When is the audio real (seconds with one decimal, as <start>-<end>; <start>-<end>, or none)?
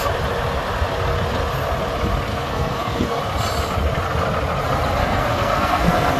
0.0-2.3; 3.2-5.0